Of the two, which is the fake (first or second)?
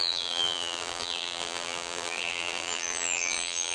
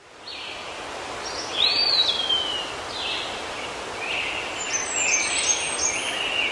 first